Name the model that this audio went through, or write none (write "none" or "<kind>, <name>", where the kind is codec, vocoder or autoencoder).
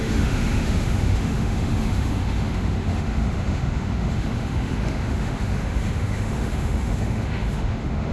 autoencoder, DAC-VAE